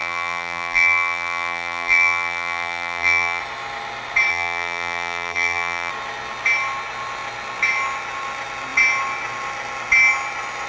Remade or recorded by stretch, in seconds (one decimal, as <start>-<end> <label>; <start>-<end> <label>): 0.0-3.4 remade; 3.4-4.3 recorded; 4.3-5.9 remade; 5.9-10.7 recorded